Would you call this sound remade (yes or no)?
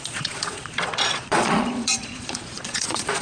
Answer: yes